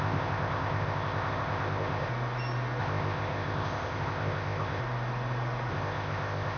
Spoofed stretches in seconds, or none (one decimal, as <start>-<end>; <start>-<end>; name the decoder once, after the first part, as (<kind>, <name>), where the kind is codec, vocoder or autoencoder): 0.0-2.1 (codec, ZipCodec); 2.8-4.8; 5.7-6.6